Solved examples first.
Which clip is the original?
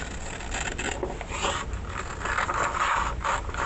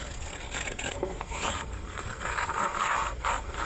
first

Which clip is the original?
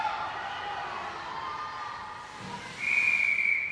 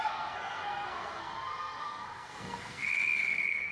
first